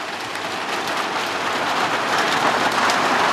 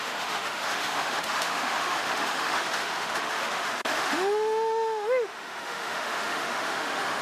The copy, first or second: second